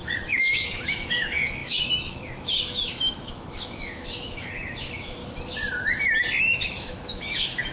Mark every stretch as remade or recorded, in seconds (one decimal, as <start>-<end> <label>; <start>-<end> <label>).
0.0-5.2 remade; 5.2-6.4 recorded; 6.4-7.7 remade